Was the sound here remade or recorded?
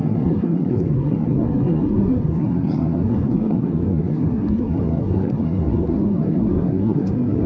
remade